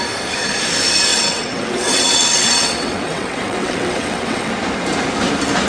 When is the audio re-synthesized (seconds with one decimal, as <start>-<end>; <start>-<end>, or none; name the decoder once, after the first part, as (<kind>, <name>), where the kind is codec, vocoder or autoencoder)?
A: 1.1-4.5 (vocoder, WaveNeXt)